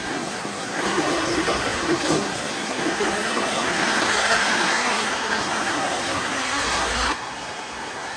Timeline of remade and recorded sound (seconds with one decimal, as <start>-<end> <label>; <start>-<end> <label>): 0.0-8.2 remade